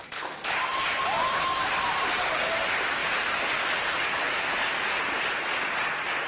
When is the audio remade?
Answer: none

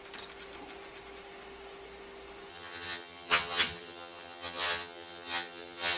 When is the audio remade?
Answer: 2.5-6.0 (vocoder, HiFi-GAN)

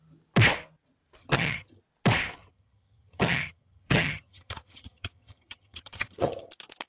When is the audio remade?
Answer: 1.2-1.8 (vocoder, HiFi-GAN); 2.4-6.5

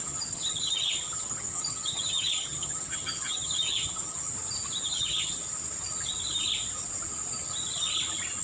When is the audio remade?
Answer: 0.0-4.3 (vocoder, HiFi-GAN); 4.8-5.4

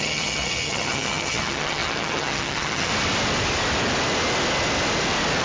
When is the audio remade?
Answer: 0.0-2.9 (vocoder, HiFi-GAN)

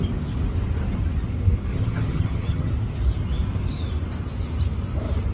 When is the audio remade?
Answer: 1.7-2.7 (vocoder, HiFi-GAN)

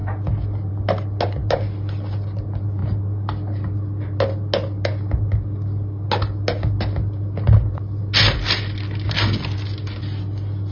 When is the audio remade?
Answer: none